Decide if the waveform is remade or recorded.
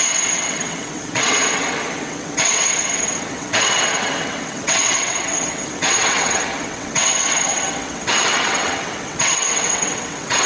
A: remade